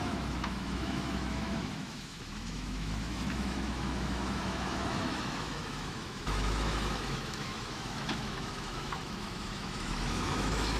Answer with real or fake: fake